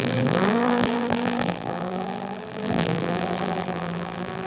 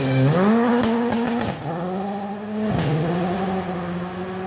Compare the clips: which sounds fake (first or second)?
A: first